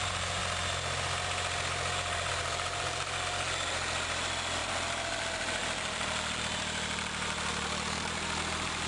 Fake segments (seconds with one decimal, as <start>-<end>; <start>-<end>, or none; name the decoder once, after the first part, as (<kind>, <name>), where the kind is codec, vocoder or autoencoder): 0.0-0.4 (vocoder, BigVGAN v2); 2.3-8.9